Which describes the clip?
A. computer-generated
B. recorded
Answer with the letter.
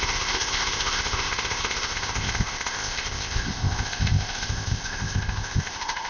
A